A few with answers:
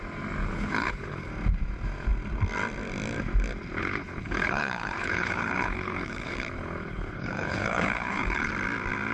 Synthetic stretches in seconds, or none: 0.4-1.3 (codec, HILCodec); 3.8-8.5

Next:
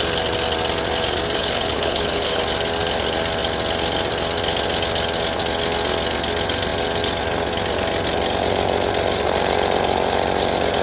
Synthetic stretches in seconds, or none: 1.4-2.4 (codec, HILCodec)

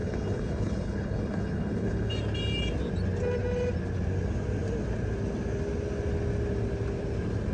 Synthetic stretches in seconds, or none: 0.0-2.1 (codec, HILCodec)